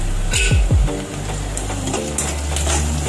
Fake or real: real